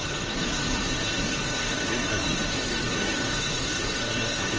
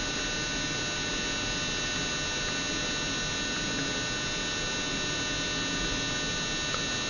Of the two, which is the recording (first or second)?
second